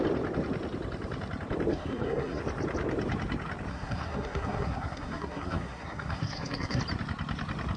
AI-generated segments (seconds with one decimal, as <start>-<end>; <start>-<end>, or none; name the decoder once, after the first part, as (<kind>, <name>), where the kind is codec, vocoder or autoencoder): 1.7-2.4 (codec, SNAC); 3.7-6.8